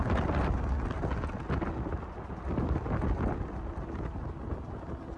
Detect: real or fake real